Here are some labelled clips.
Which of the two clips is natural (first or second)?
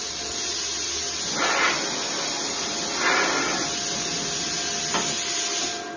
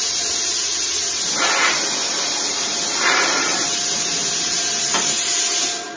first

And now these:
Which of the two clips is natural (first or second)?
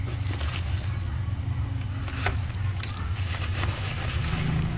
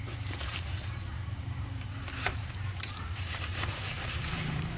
first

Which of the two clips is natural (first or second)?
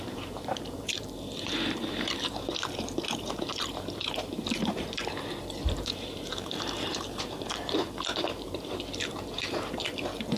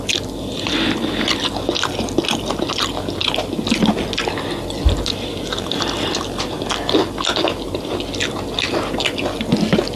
second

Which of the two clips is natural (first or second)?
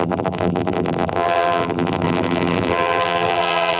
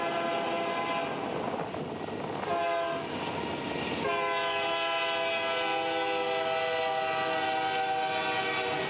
second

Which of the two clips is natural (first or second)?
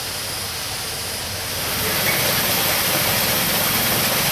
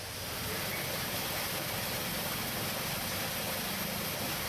first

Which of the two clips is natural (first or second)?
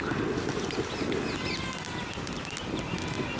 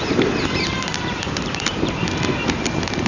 first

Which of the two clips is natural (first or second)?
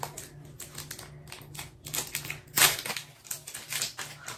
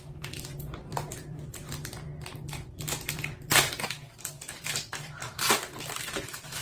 first